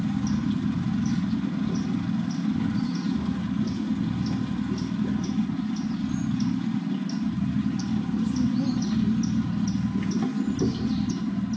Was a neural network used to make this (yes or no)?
no